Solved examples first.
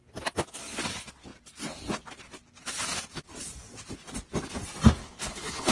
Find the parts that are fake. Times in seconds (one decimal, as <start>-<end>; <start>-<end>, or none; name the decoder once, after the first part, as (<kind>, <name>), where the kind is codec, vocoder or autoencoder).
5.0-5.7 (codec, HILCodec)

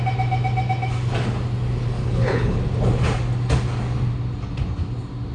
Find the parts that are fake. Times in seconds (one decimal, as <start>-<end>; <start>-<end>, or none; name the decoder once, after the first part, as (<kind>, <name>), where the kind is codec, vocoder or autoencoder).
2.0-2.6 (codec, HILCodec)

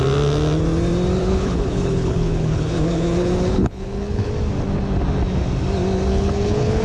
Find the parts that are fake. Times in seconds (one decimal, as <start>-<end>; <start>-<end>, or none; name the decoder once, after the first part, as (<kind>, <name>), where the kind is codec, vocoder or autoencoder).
1.2-4.3 (codec, HILCodec); 6.1-6.8

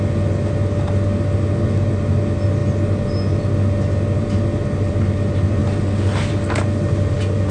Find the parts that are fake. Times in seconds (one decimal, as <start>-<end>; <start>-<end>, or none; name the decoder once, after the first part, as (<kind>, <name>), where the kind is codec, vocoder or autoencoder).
none

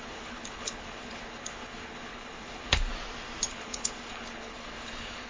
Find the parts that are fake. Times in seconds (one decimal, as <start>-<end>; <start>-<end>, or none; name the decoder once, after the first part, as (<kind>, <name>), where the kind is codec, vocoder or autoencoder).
0.0-2.9 (codec, HILCodec); 3.5-5.3

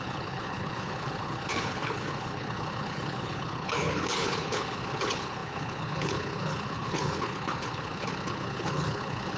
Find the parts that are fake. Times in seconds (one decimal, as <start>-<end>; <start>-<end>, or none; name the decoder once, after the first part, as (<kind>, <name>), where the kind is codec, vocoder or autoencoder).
0.0-9.4 (codec, HILCodec)

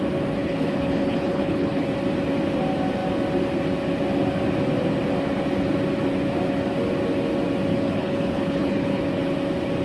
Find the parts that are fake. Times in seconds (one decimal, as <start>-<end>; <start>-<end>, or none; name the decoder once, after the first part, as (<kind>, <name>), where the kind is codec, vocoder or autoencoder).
0.4-1.9 (codec, HILCodec); 7.7-9.0